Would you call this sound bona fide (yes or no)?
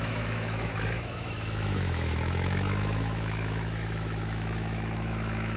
no